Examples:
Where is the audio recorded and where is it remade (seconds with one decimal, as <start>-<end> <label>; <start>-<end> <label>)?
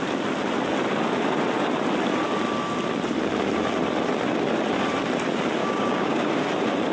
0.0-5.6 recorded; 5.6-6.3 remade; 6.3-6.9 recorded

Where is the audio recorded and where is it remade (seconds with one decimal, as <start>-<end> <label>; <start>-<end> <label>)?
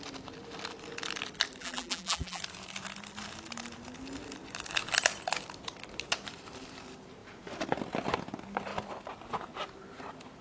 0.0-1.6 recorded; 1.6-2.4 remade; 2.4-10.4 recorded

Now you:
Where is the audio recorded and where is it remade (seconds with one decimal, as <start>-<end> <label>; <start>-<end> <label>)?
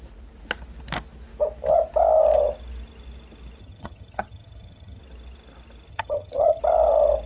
0.0-3.6 recorded; 3.6-5.0 remade; 5.0-5.9 recorded; 5.9-6.6 remade; 6.6-7.3 recorded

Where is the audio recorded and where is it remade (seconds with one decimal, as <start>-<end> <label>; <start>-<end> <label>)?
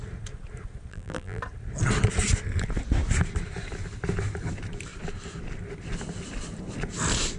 0.0-0.9 recorded; 0.9-1.4 remade; 1.4-7.4 recorded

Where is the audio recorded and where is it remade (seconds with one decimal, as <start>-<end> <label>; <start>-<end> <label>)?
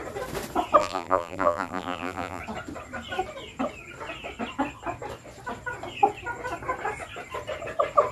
0.0-0.8 recorded; 0.8-2.4 remade; 2.4-8.1 recorded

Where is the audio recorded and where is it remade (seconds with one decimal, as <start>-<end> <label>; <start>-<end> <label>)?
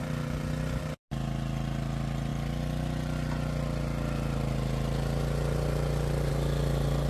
0.0-7.1 recorded